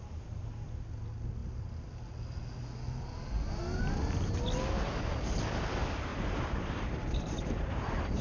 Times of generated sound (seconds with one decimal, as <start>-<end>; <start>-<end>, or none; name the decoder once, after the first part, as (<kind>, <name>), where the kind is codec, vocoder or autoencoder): 6.1-8.2 (vocoder, BigVGAN v2)